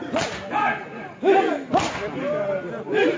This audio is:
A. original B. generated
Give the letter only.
A